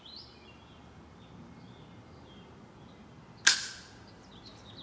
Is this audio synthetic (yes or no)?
no